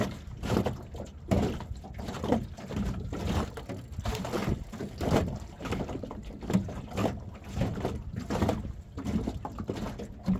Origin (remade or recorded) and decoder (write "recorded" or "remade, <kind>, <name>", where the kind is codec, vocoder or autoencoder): recorded